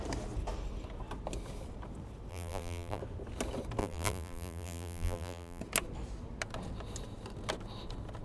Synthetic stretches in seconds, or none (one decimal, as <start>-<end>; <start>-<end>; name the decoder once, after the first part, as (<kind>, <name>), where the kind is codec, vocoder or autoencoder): 2.3-3.0 (vocoder, BigVGAN v2); 3.8-5.6